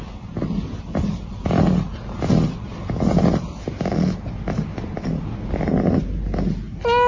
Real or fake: real